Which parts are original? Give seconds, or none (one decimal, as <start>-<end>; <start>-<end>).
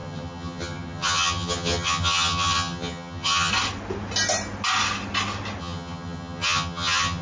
3.5-5.6